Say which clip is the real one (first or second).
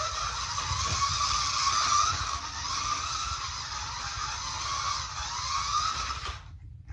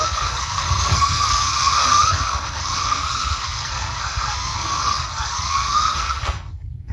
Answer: first